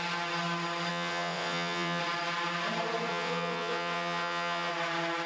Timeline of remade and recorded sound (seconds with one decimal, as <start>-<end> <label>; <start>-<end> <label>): 0.0-0.9 recorded; 0.9-2.0 remade; 2.0-3.1 recorded; 3.1-4.7 remade; 4.7-5.3 recorded